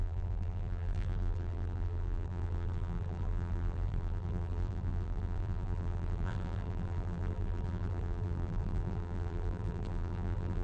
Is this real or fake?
fake